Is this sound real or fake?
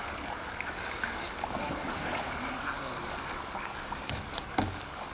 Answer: fake